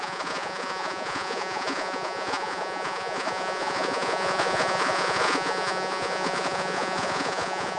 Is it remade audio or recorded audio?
remade